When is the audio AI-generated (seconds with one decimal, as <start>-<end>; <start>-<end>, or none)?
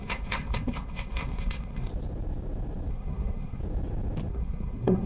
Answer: 0.0-1.9; 2.9-3.6; 4.3-5.1